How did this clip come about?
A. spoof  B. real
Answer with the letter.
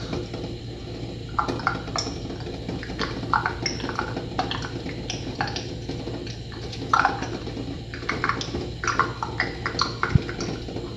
B